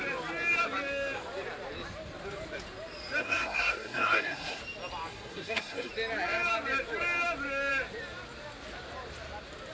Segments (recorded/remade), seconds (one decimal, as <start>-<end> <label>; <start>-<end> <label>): 0.0-3.2 recorded; 3.2-4.6 remade; 4.6-5.1 recorded; 5.1-5.9 remade; 5.9-9.7 recorded